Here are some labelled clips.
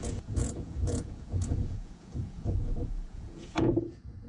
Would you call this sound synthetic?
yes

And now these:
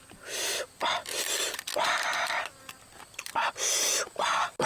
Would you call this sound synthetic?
no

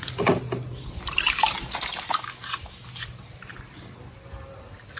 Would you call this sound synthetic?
no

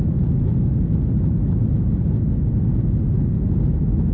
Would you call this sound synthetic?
no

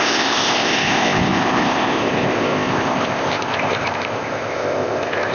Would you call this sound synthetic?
yes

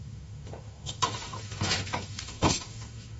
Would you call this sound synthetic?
yes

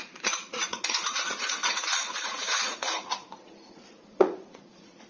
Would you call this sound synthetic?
yes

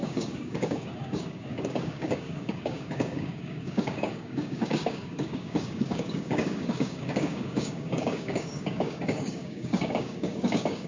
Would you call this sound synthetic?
yes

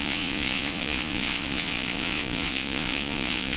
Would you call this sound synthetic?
yes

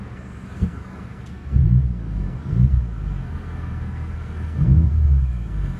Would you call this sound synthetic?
yes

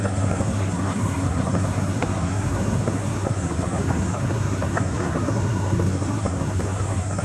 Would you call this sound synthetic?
yes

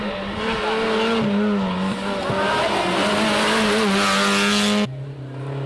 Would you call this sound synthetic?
no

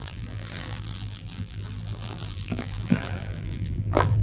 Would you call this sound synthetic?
yes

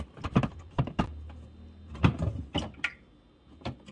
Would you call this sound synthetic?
no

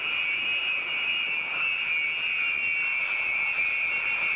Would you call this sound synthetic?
no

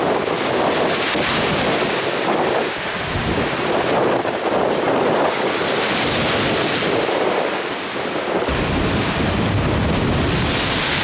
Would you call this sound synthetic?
no